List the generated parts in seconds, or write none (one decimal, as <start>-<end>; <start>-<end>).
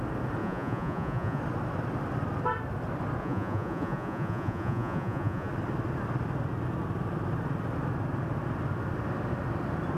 0.4-1.4; 3.2-5.5